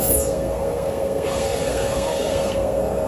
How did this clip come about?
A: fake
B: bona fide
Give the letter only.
A